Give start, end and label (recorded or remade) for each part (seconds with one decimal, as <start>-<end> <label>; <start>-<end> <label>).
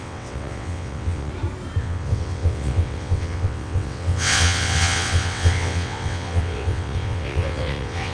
0.0-1.3 remade; 1.3-1.8 recorded; 1.8-8.1 remade